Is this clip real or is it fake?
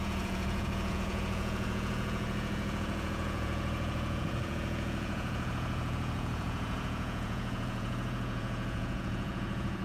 fake